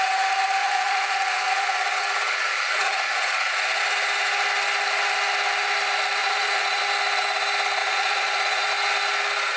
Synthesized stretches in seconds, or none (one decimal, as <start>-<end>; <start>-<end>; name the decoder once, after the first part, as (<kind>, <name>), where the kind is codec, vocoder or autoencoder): 0.6-3.8 (vocoder, Vocos); 6.2-6.8; 7.8-8.7